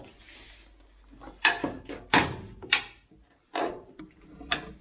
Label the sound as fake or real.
real